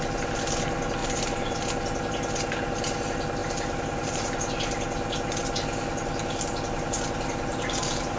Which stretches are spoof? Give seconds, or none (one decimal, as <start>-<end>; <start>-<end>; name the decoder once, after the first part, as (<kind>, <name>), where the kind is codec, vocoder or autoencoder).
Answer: 1.0-1.6 (vocoder, BigVGAN v2); 3.4-4.2; 7.5-8.2